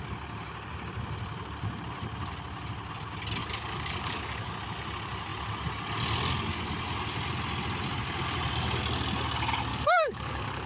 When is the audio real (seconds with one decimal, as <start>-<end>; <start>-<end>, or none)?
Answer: 0.0-3.4; 4.5-9.7